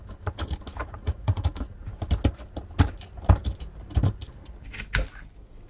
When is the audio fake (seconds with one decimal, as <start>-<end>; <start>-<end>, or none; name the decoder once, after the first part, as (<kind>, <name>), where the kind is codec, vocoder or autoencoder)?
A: 0.8-1.6 (vocoder, Vocos)